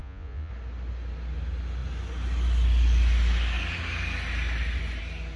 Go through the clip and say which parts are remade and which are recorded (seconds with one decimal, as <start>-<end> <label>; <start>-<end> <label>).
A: 0.0-0.5 remade; 0.5-5.4 recorded